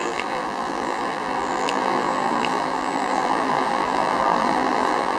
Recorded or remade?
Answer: remade